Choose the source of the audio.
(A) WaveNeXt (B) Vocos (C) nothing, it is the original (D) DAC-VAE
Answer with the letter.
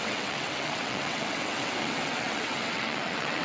A